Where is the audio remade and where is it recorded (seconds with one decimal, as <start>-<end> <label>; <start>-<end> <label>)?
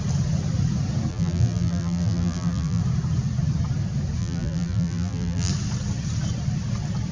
0.0-1.1 recorded; 1.1-2.8 remade; 2.8-4.2 recorded; 4.2-5.5 remade; 5.5-7.1 recorded